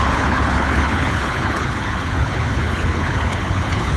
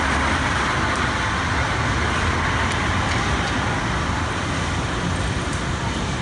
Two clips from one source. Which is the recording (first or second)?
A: second